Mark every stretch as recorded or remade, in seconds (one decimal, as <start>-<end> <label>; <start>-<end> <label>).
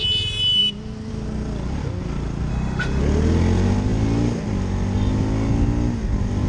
0.0-2.5 recorded; 2.5-3.0 remade; 3.0-6.5 recorded